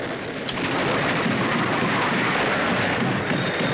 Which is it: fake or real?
real